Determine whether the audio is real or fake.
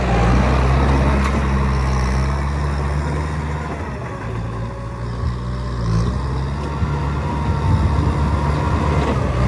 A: real